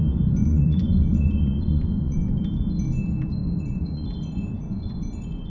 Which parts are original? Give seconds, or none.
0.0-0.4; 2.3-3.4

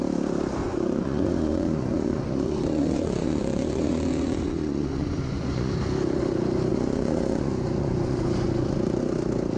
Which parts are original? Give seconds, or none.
0.0-0.6; 5.7-6.7; 9.0-9.6

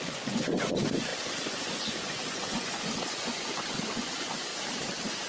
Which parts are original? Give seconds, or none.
4.5-5.3

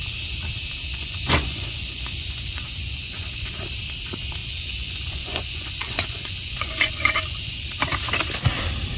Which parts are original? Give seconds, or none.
0.0-0.9; 3.5-4.4; 7.6-9.0

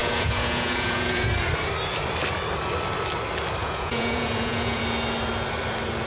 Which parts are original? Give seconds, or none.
1.3-3.6; 4.8-6.1

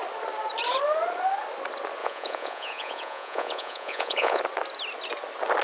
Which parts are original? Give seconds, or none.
0.0-2.0; 4.4-5.6

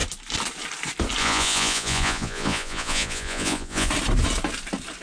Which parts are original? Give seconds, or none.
0.0-1.2; 3.9-5.0

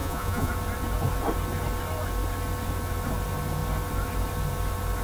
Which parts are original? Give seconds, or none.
0.5-5.0